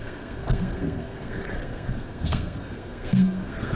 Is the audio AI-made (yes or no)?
yes